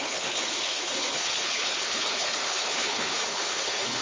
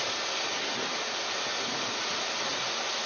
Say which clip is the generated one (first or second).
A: first